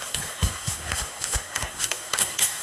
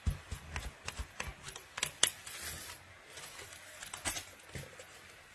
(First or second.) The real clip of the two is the second